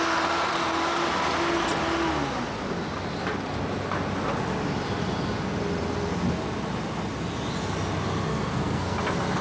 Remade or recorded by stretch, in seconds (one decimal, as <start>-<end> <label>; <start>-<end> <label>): 0.0-8.3 recorded; 8.3-9.0 remade; 9.0-9.4 recorded